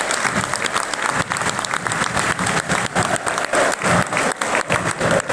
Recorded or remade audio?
recorded